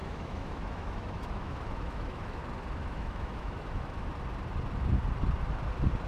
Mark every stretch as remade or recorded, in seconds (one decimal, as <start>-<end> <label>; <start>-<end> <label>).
0.0-2.4 remade; 2.4-2.8 recorded; 2.8-4.1 remade; 4.1-6.1 recorded